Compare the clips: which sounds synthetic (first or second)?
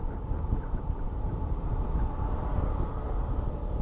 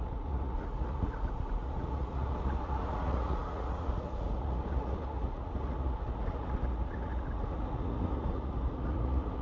second